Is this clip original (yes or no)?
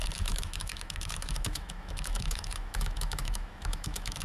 no